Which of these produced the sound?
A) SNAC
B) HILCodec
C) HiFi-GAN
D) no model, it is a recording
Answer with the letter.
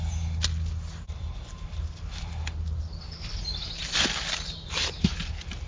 D